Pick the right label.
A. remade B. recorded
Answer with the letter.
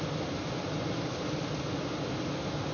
B